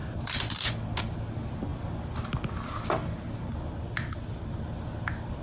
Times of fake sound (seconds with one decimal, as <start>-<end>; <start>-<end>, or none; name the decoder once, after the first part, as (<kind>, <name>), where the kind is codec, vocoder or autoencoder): none